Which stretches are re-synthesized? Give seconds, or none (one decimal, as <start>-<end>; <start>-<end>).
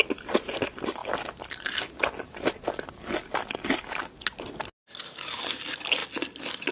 none